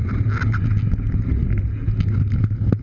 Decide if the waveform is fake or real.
real